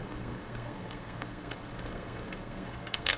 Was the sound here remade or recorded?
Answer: remade